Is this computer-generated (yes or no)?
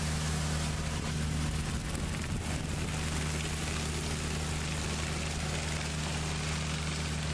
no